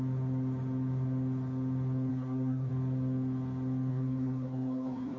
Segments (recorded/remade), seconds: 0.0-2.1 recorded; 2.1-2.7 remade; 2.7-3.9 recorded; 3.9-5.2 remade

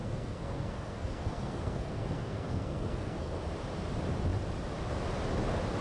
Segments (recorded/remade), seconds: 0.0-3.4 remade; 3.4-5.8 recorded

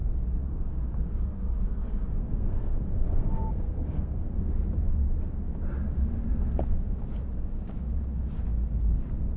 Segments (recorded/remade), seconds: 0.0-2.1 recorded; 2.1-4.3 remade; 4.3-9.4 recorded

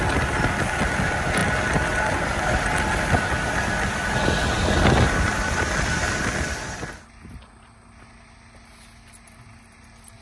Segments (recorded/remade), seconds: 0.0-10.2 recorded